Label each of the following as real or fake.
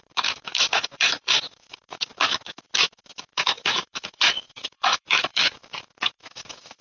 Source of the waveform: fake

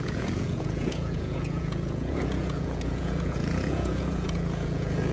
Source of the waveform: fake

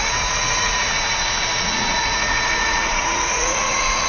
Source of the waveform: fake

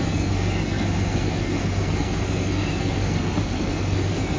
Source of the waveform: fake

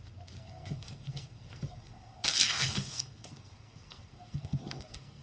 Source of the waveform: fake